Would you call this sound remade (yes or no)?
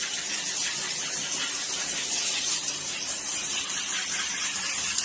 no